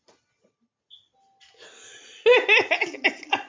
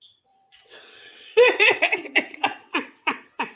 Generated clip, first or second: second